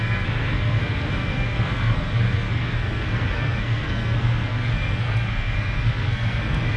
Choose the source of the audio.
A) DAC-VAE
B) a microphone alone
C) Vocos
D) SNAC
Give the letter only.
D